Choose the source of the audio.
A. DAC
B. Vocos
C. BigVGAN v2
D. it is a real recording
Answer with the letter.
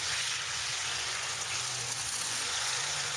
B